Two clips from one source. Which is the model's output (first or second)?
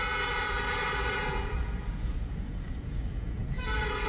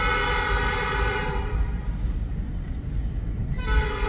first